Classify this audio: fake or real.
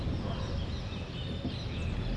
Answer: real